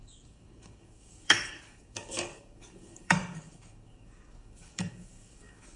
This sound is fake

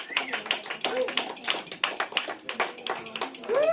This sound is real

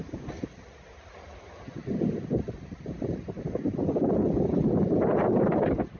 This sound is real